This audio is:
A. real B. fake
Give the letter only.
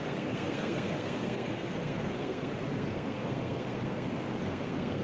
B